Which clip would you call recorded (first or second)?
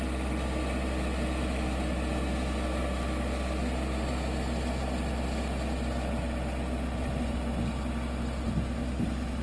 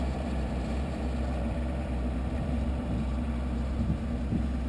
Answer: first